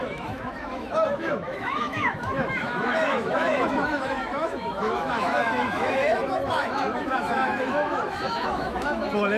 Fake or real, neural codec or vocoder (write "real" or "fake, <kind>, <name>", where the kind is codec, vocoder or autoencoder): fake, autoencoder, DAC-VAE